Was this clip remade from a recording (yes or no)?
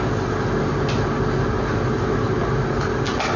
no